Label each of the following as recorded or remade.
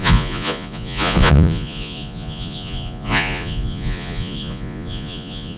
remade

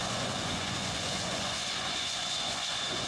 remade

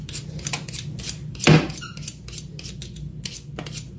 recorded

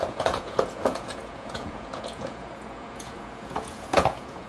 remade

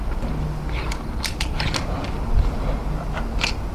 recorded